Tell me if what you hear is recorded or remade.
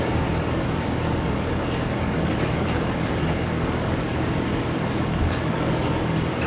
remade